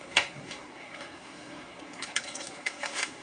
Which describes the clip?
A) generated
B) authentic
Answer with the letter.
A